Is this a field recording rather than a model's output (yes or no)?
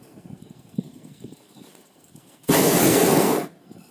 no